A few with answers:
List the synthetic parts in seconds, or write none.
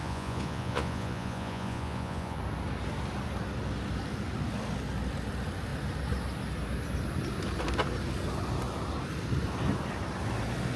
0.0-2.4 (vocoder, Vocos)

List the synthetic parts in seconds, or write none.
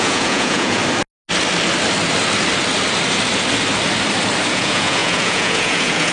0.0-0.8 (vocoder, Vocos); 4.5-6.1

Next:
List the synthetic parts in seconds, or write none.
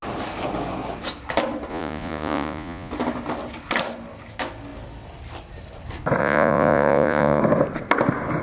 1.7-2.9 (vocoder, Vocos); 6.2-7.4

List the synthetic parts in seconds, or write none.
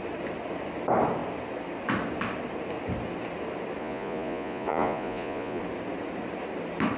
3.8-5.6 (vocoder, Vocos)